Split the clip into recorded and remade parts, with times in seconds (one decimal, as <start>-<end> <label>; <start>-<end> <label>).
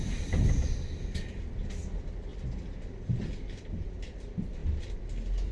0.0-5.5 recorded